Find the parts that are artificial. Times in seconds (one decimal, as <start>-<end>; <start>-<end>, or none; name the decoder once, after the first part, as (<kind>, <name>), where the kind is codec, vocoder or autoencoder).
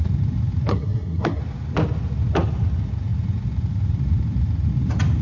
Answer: 0.7-1.4 (codec, SNAC)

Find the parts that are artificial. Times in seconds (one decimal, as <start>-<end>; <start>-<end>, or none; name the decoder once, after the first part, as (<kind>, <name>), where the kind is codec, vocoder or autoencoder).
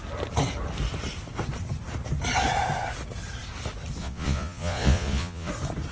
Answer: 4.0-5.5 (vocoder, Vocos)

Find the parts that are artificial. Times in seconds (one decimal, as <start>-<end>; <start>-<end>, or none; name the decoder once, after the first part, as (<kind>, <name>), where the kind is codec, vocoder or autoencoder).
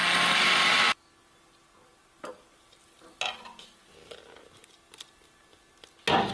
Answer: none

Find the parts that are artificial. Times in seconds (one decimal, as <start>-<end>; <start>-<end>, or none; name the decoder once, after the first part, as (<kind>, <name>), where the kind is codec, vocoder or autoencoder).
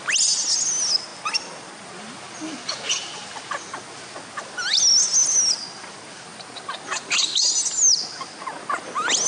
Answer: none